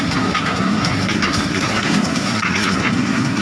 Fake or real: fake